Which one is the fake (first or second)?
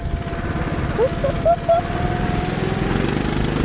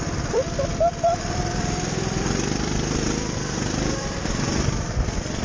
second